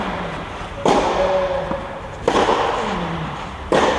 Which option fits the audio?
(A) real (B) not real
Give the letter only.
A